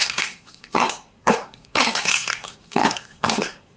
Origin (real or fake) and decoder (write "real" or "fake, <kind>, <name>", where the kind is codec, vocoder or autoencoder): fake, codec, SNAC